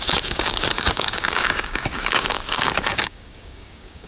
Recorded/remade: remade